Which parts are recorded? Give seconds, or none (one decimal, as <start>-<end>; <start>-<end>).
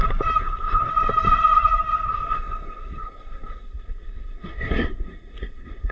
0.0-0.4; 0.9-2.1